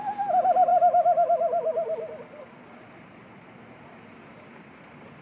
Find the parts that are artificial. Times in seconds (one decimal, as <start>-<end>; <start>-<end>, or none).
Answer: none